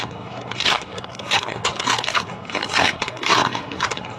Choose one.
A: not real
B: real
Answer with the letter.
A